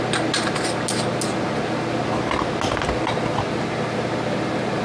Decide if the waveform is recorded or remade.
recorded